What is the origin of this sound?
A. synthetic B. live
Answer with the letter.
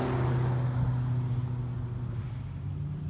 B